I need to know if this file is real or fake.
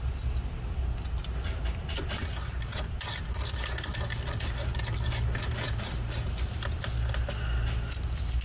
real